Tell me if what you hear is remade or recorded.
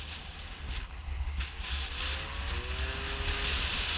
recorded